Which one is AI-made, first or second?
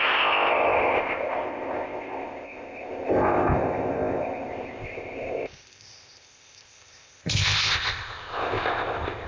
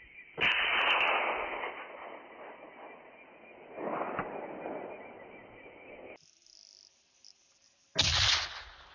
first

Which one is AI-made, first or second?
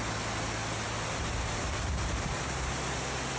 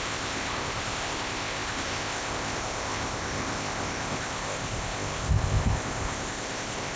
second